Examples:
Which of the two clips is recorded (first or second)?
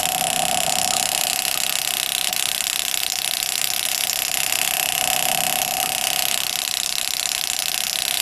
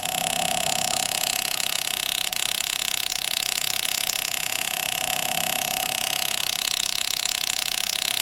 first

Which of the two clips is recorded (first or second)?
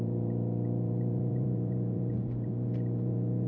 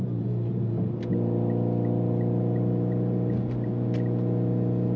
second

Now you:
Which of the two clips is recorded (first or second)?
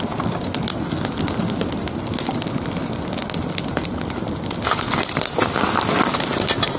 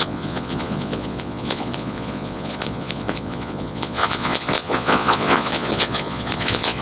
first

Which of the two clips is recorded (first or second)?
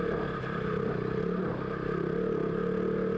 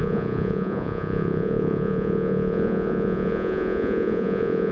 first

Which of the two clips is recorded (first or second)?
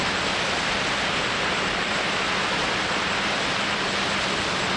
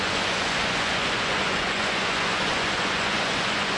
first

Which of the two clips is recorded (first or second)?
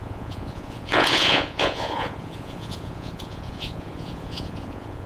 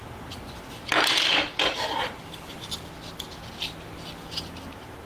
second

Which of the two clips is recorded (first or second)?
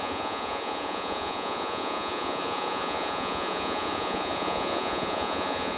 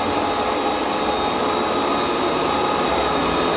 second